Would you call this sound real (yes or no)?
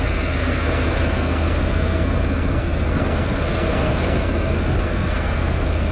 no